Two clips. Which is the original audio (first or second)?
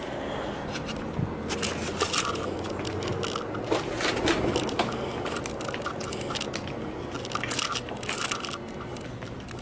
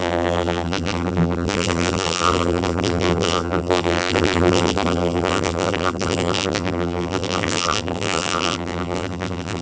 first